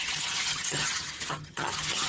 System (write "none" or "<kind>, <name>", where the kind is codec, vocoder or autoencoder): vocoder, HiFi-GAN